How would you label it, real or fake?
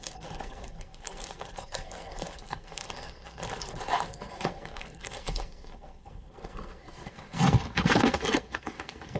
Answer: fake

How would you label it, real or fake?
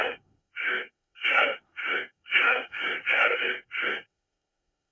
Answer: fake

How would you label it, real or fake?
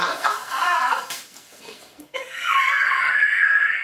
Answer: fake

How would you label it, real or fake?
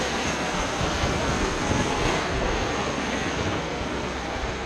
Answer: fake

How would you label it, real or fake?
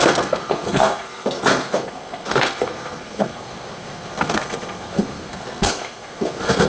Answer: fake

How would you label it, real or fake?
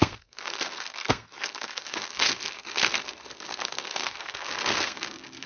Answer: fake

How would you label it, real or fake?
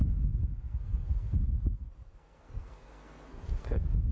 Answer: fake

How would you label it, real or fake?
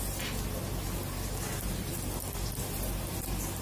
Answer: real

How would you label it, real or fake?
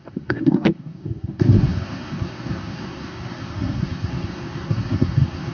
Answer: fake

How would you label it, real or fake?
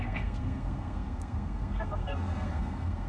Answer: fake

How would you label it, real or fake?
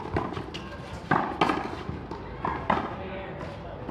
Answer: real